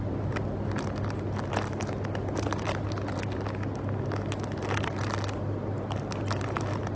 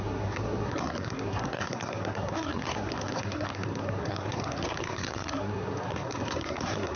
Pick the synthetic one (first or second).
second